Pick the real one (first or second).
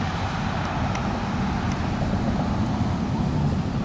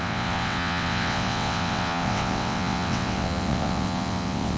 first